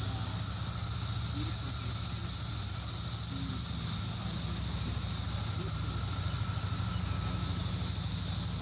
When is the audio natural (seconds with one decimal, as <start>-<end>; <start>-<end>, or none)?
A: 0.0-8.6